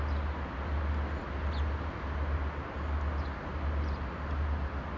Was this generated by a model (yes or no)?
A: no